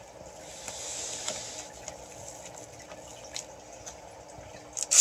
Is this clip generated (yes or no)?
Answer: no